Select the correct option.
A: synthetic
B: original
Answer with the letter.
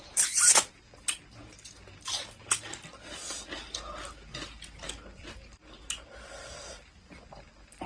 B